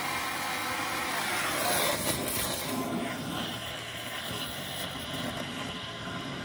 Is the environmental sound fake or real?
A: real